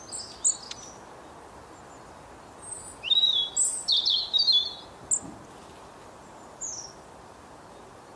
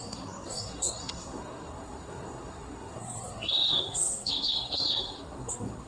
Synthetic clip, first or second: second